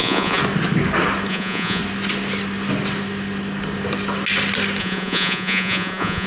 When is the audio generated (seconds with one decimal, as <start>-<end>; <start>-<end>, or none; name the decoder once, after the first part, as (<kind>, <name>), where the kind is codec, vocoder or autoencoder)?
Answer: 0.0-0.4 (vocoder, Vocos); 1.3-1.8; 4.8-6.3